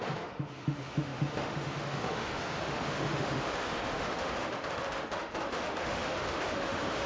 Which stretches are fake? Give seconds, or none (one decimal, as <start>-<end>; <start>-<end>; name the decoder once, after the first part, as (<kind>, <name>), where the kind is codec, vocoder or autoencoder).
0.0-7.1 (autoencoder, DAC-VAE)